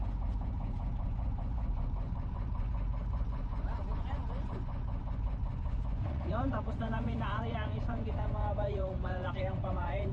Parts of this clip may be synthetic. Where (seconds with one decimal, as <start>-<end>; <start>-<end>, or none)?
0.0-10.1